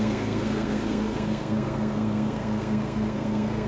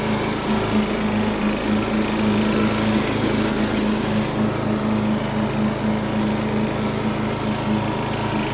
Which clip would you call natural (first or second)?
second